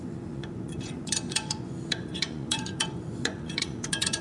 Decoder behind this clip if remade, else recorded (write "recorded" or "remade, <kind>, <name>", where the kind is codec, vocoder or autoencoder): remade, vocoder, Vocos